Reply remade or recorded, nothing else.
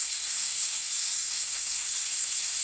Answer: remade